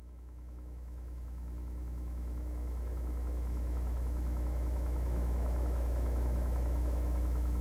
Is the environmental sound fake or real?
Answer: fake